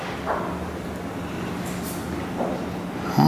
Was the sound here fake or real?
real